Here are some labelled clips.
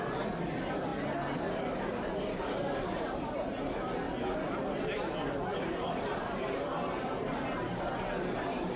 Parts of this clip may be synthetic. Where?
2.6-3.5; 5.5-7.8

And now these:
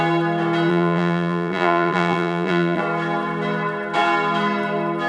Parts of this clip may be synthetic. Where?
0.7-2.8

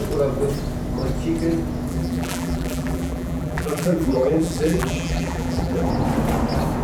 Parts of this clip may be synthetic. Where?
1.9-5.9

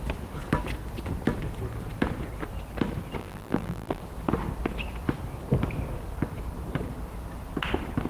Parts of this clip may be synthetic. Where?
3.2-4.0

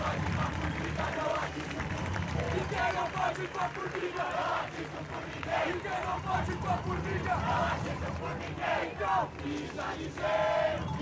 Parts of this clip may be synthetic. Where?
0.0-2.8; 3.8-4.5; 5.2-8.3; 10.1-11.0

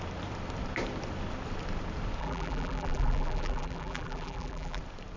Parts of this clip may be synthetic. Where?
2.2-4.8